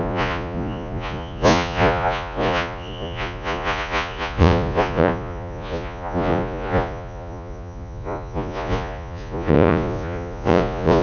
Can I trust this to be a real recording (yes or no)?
no